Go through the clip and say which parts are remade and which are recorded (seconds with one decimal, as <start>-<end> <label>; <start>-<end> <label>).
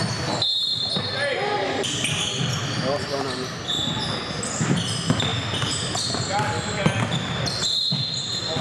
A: 0.0-8.6 recorded